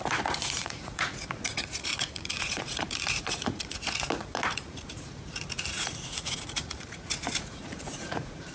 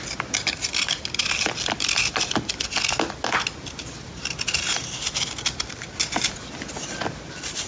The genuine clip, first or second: second